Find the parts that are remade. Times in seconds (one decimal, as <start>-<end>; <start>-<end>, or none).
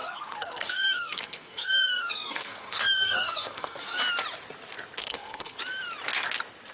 0.0-4.0; 5.0-5.6